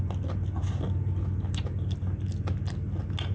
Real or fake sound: real